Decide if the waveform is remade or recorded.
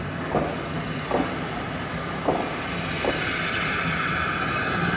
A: recorded